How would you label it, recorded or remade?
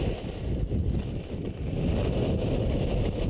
recorded